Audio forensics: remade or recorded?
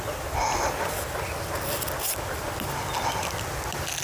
recorded